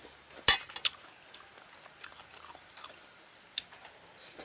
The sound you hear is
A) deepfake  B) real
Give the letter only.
B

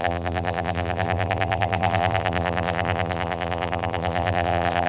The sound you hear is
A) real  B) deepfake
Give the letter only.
B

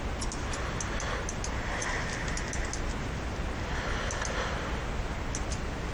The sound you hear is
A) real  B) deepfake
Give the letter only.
A